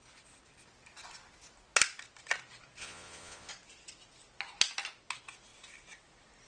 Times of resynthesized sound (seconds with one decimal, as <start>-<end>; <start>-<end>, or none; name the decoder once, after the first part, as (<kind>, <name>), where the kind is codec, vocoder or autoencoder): 2.8-3.5 (vocoder, Vocos)